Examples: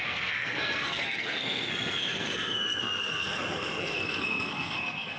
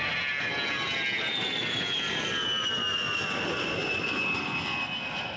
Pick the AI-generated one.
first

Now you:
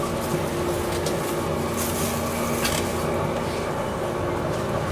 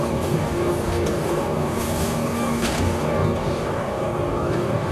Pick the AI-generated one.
second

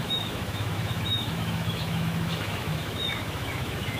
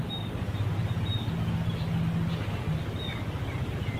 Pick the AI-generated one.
first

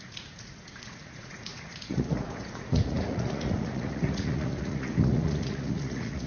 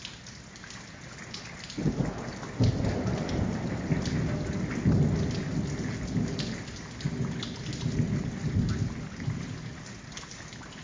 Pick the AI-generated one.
first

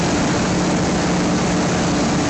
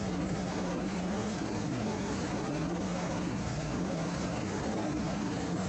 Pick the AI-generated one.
second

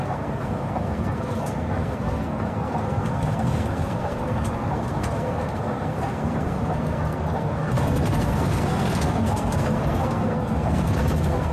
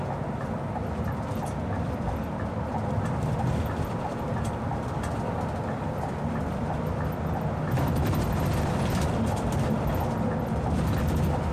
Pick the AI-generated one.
first